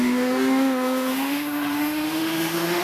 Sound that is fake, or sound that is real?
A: fake